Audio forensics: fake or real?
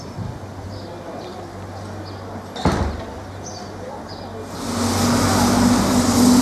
real